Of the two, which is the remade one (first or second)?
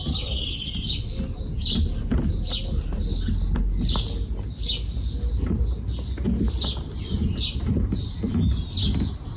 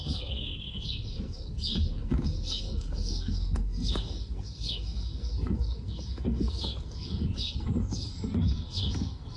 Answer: second